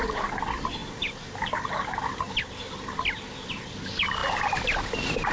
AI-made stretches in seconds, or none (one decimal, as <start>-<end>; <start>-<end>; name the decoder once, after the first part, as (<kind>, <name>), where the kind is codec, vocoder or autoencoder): none